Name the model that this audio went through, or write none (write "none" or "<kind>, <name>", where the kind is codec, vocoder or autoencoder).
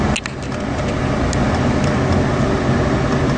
none